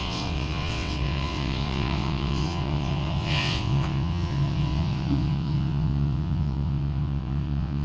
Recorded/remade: remade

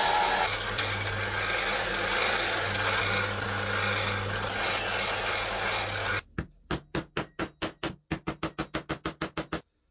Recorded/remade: recorded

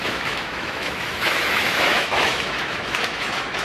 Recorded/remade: remade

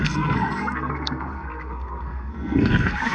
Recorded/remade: remade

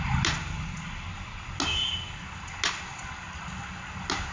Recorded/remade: recorded